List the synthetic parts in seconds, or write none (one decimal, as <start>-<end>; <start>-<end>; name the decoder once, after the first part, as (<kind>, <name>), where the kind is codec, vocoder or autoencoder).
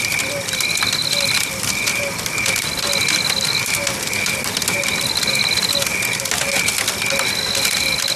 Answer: none